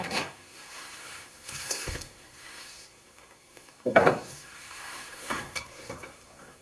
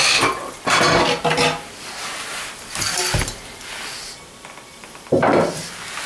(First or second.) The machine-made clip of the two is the first